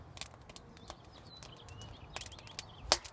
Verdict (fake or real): real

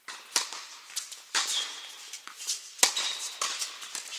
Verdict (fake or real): real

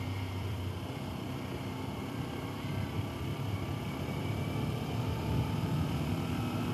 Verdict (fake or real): fake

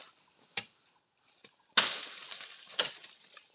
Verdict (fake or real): real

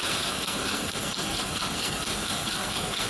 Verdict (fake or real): fake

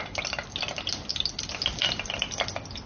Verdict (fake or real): real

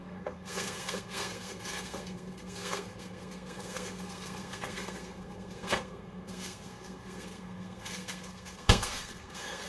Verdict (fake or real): fake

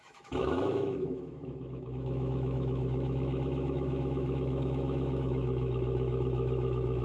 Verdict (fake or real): fake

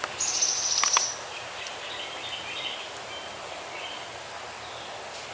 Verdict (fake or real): real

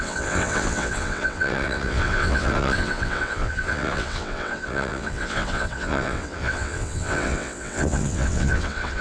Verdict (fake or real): fake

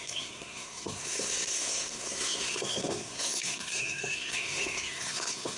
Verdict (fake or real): fake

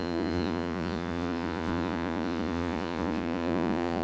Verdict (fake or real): fake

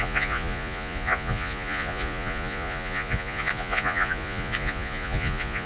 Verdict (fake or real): fake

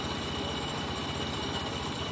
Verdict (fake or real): fake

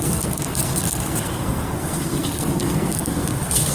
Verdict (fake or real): fake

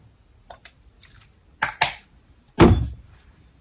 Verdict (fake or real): real